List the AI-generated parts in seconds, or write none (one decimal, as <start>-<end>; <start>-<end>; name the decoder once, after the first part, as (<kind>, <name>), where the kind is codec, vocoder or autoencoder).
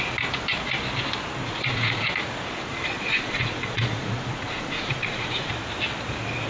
1.4-2.1 (vocoder, Vocos); 3.1-5.5